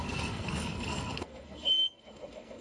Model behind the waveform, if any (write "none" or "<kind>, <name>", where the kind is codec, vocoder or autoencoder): codec, SNAC